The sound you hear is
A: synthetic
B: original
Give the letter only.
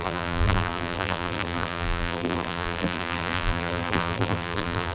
A